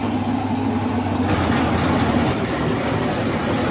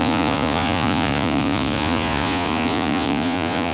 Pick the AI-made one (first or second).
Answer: second